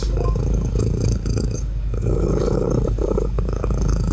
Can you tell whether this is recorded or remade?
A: remade